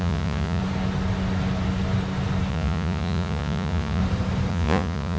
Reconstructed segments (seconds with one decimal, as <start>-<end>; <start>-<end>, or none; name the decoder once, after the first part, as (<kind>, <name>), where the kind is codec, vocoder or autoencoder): 0.0-0.6 (vocoder, Vocos); 2.5-4.0; 4.5-5.2